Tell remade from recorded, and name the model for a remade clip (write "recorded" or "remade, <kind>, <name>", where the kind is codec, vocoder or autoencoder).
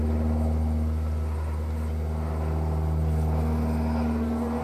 recorded